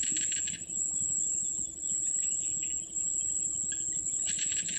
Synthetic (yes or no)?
no